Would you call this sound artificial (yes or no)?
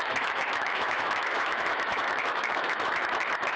yes